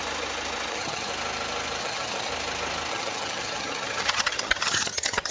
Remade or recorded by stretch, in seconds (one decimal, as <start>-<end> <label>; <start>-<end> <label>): 0.0-0.7 recorded; 0.7-1.1 remade; 1.1-1.8 recorded; 1.8-2.3 remade; 2.3-2.9 recorded; 2.9-5.3 remade